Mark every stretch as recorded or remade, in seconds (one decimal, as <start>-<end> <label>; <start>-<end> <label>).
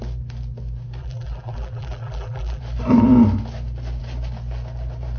0.0-1.0 recorded; 1.0-2.6 remade; 2.6-5.2 recorded